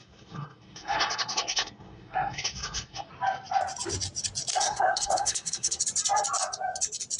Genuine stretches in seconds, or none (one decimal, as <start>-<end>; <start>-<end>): 3.1-4.5; 5.8-7.2